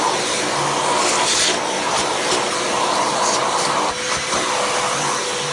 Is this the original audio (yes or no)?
yes